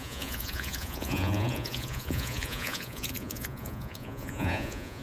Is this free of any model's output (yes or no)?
no